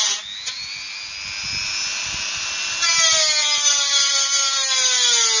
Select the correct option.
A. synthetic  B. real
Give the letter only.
B